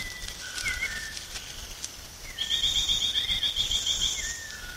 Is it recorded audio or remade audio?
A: recorded